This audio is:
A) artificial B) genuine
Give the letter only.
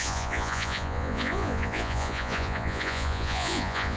A